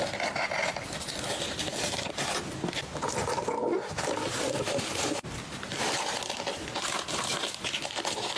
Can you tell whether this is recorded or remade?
recorded